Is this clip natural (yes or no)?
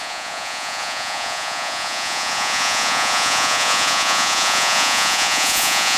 no